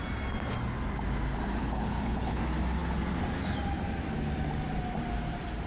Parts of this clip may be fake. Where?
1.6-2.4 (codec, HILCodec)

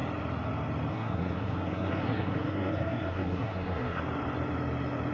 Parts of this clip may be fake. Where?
0.9-4.0 (codec, SNAC)

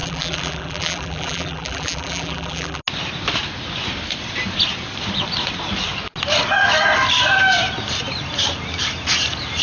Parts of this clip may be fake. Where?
0.0-2.8 (vocoder, BigVGAN v2)

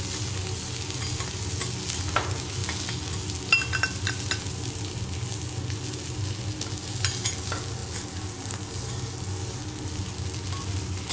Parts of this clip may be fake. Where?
none

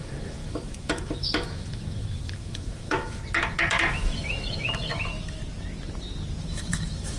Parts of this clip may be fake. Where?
0.0-3.2 (autoencoder, DAC-VAE); 3.9-5.4; 6.4-7.2

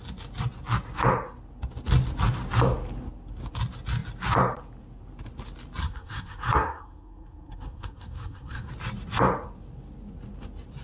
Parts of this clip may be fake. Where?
5.8-8.7 (codec, SNAC)

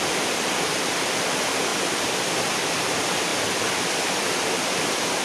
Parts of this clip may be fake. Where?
0.0-1.7 (vocoder, BigVGAN v2); 2.7-3.3; 4.5-5.2